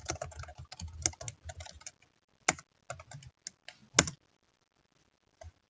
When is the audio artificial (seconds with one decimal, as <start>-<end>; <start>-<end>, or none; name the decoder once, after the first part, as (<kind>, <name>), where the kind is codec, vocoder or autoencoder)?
none